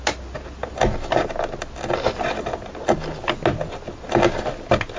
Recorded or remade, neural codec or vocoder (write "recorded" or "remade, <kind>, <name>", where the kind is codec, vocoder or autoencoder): recorded